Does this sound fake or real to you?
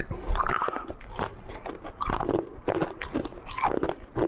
real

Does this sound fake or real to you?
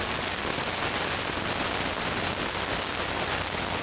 real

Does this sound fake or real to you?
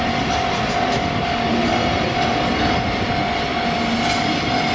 real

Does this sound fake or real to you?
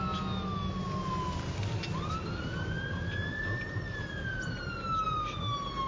real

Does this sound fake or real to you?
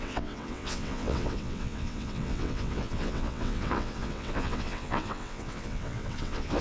fake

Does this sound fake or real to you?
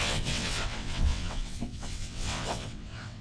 fake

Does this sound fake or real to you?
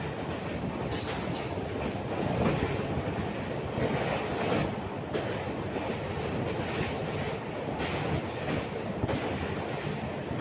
real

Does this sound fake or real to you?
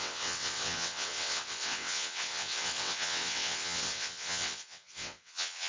fake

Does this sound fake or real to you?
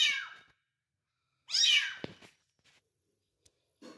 real